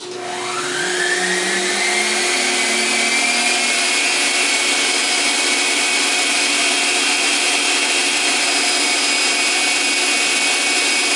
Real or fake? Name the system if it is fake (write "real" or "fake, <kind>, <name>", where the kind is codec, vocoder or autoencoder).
real